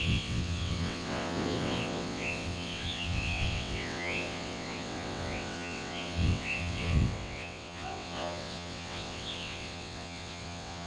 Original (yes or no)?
no